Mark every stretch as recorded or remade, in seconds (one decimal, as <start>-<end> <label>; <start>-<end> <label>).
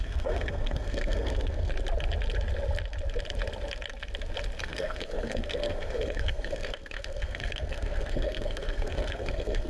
0.0-1.7 remade; 1.7-4.6 recorded; 4.6-9.7 remade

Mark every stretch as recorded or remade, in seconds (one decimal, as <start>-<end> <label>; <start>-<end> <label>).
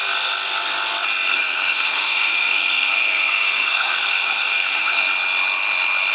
0.0-1.3 recorded; 1.3-5.0 remade; 5.0-6.1 recorded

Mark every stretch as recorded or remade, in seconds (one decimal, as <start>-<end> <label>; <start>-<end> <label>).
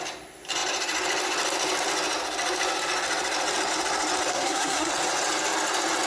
0.0-4.3 recorded; 4.3-4.9 remade; 4.9-6.1 recorded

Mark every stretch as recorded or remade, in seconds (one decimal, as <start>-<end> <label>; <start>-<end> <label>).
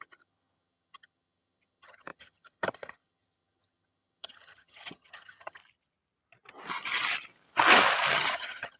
0.0-5.6 remade; 5.6-8.1 recorded; 8.1-8.8 remade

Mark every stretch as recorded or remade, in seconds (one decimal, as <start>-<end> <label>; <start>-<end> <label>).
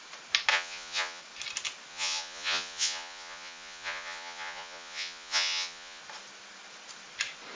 0.0-0.5 recorded; 0.5-1.2 remade; 1.2-1.9 recorded; 1.9-6.0 remade; 6.0-7.5 recorded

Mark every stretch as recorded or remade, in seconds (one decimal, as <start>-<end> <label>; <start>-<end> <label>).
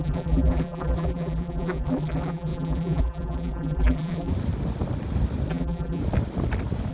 0.0-4.3 remade; 4.3-5.5 recorded; 5.5-6.0 remade; 6.0-6.9 recorded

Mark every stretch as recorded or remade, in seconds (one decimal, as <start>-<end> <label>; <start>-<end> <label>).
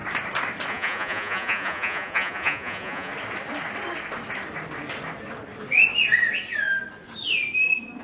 0.0-0.7 recorded; 0.7-3.1 remade; 3.1-8.0 recorded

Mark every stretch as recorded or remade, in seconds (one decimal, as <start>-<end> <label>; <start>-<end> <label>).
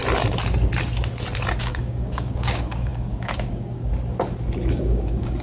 0.0-1.6 recorded; 1.6-3.9 remade; 3.9-4.7 recorded; 4.7-5.4 remade